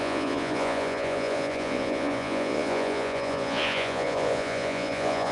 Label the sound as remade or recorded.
remade